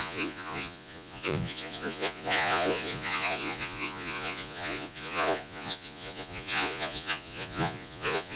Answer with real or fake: fake